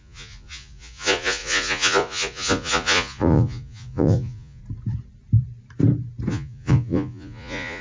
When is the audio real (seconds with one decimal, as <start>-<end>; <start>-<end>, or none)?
4.6-6.3